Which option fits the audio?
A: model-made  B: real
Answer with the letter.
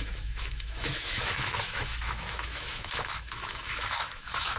A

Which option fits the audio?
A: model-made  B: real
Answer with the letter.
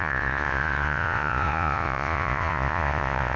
A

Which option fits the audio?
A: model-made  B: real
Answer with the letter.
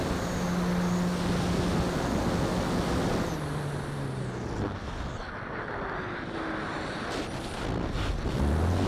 B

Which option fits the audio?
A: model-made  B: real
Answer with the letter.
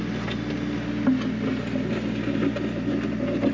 B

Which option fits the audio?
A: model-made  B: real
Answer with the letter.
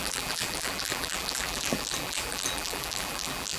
A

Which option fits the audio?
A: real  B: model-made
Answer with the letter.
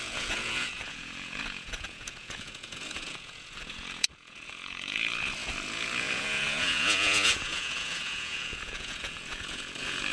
B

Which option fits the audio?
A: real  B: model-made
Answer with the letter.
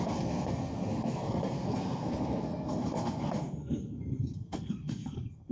B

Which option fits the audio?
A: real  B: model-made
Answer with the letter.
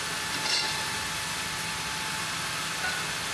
A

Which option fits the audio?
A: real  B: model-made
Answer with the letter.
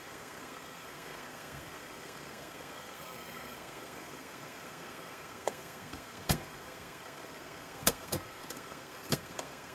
B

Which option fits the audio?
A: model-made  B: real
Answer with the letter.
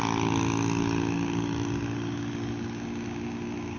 B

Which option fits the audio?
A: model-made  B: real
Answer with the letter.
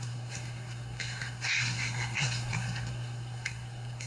A